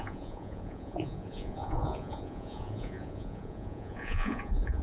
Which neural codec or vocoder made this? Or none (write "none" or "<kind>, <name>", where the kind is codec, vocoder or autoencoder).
vocoder, Vocos